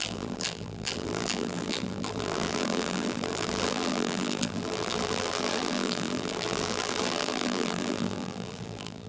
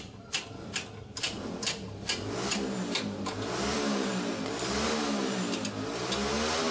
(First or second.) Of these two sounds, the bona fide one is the second